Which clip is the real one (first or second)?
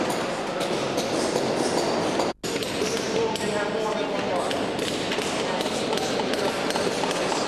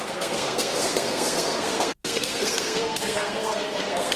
first